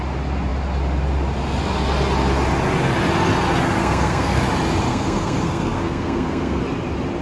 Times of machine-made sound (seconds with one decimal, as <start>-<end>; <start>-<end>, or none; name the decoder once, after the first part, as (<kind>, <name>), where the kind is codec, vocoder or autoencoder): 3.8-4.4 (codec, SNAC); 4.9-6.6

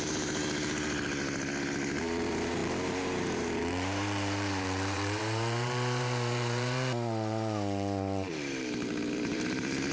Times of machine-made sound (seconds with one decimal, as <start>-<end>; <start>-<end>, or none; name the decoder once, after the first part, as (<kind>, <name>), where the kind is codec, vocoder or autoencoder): 0.0-0.4 (vocoder, BigVGAN v2); 2.0-9.9

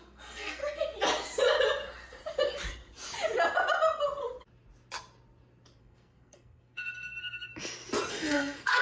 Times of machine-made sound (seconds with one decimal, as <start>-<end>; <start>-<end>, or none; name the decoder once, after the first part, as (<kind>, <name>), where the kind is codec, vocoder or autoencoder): 0.0-0.6 (codec, SNAC); 5.8-7.5; 8.1-8.8

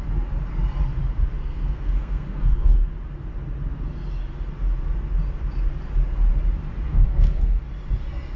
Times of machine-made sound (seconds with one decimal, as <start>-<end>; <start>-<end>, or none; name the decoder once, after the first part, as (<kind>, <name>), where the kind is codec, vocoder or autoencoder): 1.4-2.9 (codec, SNAC); 6.9-7.6

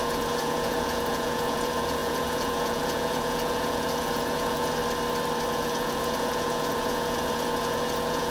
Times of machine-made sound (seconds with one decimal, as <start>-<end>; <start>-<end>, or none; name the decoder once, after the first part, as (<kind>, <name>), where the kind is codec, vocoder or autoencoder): 0.0-4.8 (vocoder, Vocos); 5.5-8.3

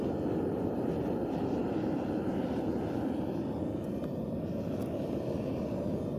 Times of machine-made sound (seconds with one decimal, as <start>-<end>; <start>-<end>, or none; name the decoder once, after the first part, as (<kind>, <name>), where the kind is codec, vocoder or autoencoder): none

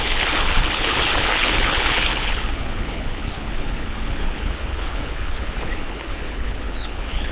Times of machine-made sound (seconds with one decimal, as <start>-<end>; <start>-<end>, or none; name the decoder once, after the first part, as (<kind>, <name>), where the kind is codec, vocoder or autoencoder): 0.0-7.3 (codec, HILCodec)

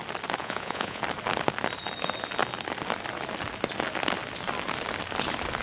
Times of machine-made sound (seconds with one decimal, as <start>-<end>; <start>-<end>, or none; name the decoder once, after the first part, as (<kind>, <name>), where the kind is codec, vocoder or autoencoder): 0.4-1.0 (vocoder, Vocos)